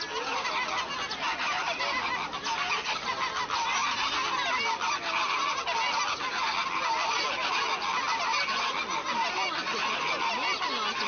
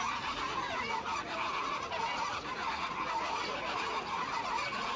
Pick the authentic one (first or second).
first